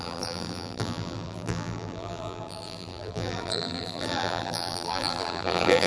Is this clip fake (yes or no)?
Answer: yes